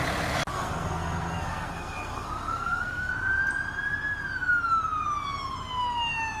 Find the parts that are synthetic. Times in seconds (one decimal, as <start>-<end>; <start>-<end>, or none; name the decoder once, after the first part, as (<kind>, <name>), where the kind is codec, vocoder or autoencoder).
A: 0.5-3.1 (codec, SNAC)